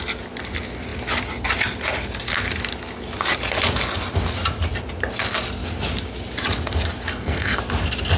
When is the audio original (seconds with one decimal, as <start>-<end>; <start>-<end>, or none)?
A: 0.0-7.1; 7.6-8.2